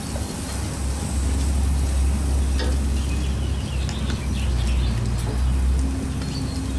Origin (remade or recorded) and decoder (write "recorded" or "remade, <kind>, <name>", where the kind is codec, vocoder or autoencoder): recorded